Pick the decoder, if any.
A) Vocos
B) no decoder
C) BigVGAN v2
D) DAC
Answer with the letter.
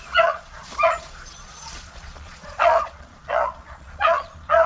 A